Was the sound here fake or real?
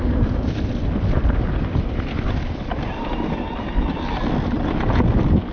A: real